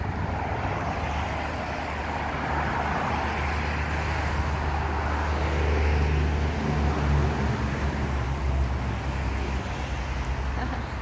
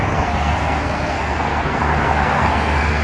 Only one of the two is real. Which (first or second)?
first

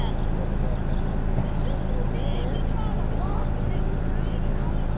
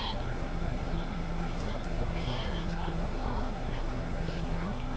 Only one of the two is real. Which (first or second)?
first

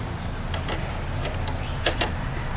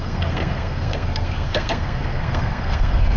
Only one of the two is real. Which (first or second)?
first